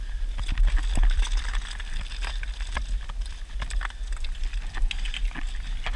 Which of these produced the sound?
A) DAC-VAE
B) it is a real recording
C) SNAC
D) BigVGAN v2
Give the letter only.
B